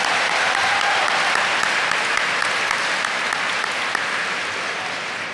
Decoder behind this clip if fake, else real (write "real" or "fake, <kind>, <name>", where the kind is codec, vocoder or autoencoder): real